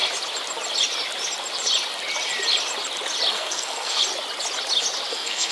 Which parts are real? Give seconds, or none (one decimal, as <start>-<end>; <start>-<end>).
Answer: 0.0-3.3; 4.0-5.1